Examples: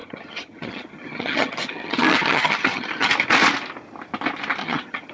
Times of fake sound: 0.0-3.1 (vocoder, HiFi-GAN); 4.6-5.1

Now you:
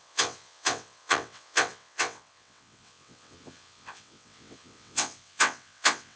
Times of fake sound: 0.0-6.2 (vocoder, WaveNeXt)

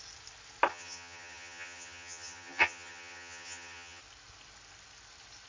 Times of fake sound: 0.7-4.0 (vocoder, HiFi-GAN)

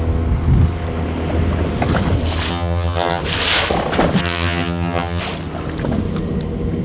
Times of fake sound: 2.5-3.2 (vocoder, HiFi-GAN); 4.2-5.2

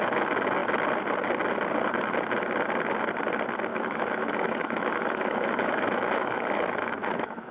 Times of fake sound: 3.7-7.5 (autoencoder, DAC-VAE)

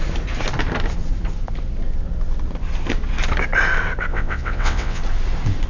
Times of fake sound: 4.1-5.0 (vocoder, WaveNeXt)

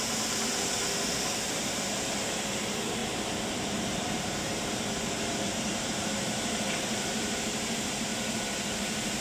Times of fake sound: 0.0-0.5 (vocoder, BigVGAN v2); 1.3-3.0; 3.6-8.1

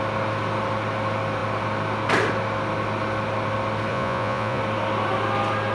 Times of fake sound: 3.9-4.6 (vocoder, Vocos)